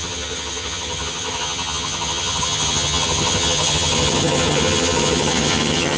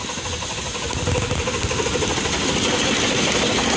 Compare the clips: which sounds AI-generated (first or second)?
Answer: first